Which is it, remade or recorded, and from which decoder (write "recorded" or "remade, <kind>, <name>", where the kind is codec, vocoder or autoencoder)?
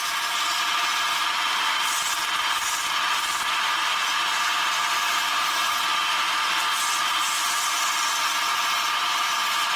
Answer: recorded